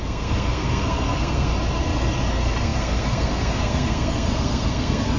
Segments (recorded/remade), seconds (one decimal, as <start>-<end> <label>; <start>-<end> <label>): 0.0-1.5 remade; 1.5-2.3 recorded; 2.3-5.2 remade